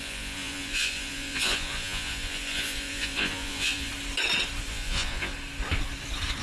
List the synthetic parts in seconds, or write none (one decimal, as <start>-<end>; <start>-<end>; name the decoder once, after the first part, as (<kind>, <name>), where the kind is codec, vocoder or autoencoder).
0.0-3.9 (vocoder, Vocos); 4.7-5.3